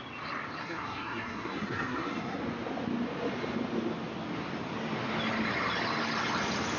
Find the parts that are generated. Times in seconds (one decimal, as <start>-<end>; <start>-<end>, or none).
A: 0.6-2.4